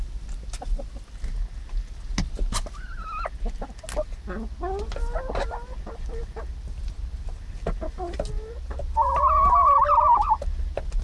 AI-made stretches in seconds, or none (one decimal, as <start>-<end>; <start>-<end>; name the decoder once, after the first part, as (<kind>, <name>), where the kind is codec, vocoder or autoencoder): none